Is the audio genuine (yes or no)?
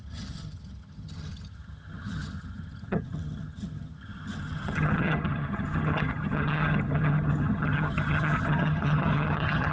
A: no